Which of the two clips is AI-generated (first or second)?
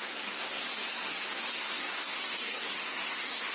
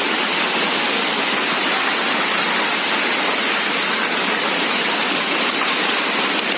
first